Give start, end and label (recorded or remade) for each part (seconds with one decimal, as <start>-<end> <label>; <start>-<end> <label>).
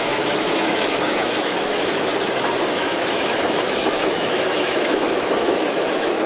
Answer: 0.0-2.1 remade; 2.1-2.7 recorded; 2.7-6.3 remade